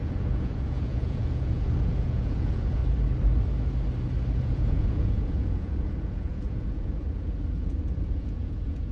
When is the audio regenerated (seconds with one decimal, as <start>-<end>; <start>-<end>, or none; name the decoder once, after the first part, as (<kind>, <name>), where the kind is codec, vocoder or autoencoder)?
0.0-2.8 (vocoder, Vocos); 4.4-8.9